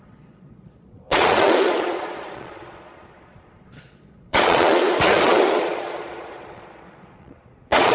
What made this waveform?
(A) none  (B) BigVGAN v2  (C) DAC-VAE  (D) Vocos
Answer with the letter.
D